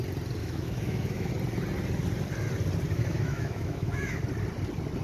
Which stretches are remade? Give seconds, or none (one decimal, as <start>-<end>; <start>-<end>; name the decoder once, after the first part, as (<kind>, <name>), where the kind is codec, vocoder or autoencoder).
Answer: 0.4-1.3 (autoencoder, DAC-VAE); 2.9-4.2